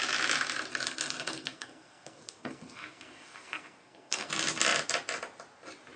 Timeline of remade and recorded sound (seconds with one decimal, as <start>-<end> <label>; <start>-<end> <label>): 0.0-0.7 recorded; 0.7-4.3 remade; 4.3-6.0 recorded